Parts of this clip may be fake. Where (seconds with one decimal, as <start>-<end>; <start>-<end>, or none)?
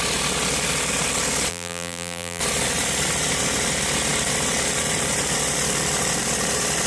1.5-2.4